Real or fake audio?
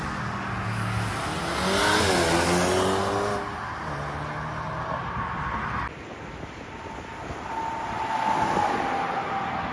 real